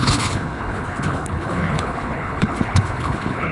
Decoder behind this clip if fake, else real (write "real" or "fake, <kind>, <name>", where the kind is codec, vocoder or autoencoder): fake, codec, HILCodec